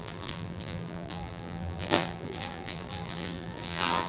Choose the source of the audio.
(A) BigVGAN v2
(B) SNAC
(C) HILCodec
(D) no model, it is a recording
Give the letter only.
A